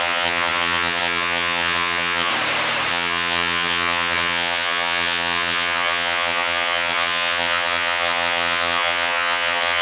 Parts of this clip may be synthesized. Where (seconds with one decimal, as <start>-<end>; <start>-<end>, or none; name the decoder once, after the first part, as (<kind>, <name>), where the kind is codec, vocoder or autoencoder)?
0.0-2.3 (vocoder, HiFi-GAN); 2.9-9.8